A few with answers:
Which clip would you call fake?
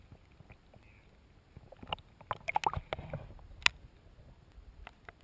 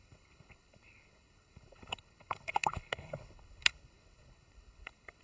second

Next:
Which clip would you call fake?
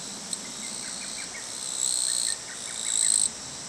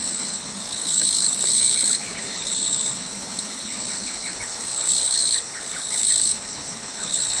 second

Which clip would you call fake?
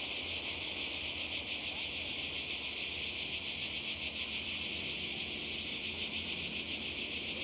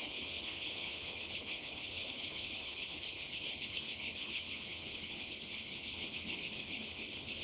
second